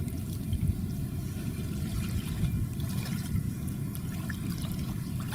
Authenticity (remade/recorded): remade